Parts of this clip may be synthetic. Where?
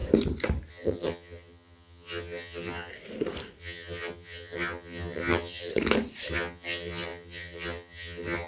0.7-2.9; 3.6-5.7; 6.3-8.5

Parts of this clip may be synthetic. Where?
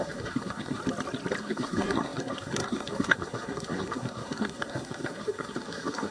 0.0-0.8; 1.4-6.1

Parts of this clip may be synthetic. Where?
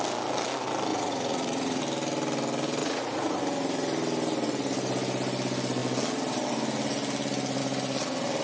0.9-1.8; 2.8-3.4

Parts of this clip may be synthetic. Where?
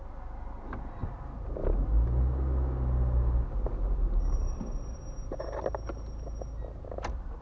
none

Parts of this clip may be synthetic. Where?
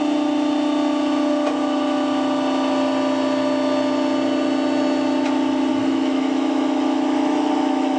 5.7-8.0